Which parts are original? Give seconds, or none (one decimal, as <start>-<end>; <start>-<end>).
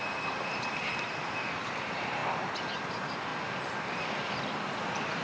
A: 2.2-2.9; 3.3-4.6